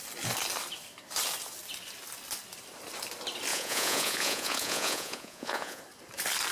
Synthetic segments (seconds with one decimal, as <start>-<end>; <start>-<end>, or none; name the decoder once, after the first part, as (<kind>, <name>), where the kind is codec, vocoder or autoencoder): 3.5-5.8 (vocoder, Vocos)